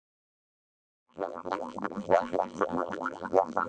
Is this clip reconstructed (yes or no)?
yes